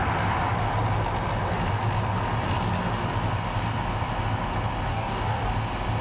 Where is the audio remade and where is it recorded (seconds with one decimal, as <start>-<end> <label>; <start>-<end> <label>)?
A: 0.0-4.9 recorded; 4.9-5.5 remade; 5.5-6.0 recorded